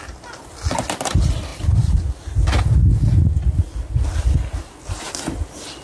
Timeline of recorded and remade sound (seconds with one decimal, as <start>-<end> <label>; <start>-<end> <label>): 0.0-5.8 recorded